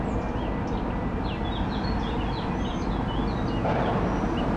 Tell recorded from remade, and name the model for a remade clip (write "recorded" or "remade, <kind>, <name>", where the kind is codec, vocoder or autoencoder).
recorded